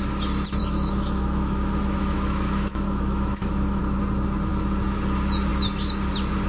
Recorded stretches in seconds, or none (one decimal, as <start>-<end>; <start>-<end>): 0.0-0.6; 3.8-6.5